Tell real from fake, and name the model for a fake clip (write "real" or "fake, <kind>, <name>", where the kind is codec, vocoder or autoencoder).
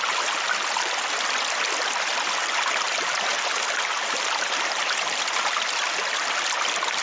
real